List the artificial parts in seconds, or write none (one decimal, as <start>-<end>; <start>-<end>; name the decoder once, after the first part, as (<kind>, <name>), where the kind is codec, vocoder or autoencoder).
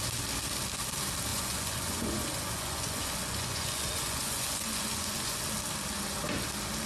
1.3-5.4 (vocoder, Vocos)